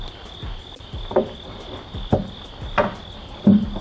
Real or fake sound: real